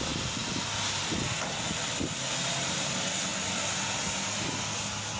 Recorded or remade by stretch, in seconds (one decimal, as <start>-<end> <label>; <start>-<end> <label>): 0.0-5.2 recorded